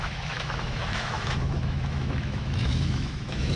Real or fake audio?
fake